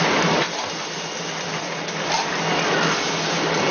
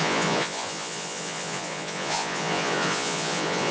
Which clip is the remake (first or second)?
second